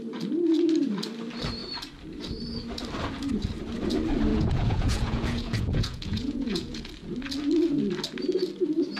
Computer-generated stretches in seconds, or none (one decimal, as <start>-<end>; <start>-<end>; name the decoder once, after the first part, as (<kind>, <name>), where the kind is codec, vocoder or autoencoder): 4.3-6.9 (vocoder, Vocos)

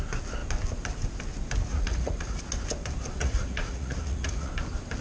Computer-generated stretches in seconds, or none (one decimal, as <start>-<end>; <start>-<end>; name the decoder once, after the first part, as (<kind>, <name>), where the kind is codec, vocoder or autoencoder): 1.7-2.4 (vocoder, Vocos); 3.2-4.5

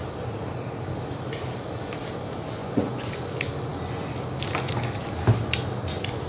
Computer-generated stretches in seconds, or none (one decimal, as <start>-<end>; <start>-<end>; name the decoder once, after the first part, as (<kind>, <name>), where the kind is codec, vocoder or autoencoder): 2.6-3.1 (vocoder, Vocos)

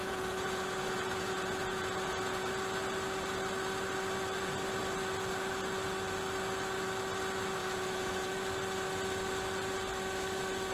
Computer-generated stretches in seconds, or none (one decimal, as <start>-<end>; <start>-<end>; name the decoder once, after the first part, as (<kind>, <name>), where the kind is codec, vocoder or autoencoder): 0.0-2.5 (vocoder, Vocos); 7.6-8.3

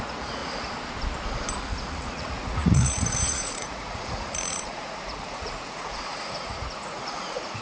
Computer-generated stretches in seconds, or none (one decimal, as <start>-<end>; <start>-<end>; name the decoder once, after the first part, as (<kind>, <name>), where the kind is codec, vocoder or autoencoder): 0.0-0.4 (vocoder, Vocos); 1.6-7.6

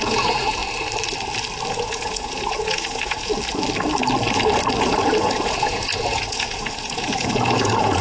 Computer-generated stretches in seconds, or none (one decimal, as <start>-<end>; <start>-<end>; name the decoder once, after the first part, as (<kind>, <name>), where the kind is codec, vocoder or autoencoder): 0.0-0.6 (vocoder, Vocos); 1.7-3.3; 4.8-8.0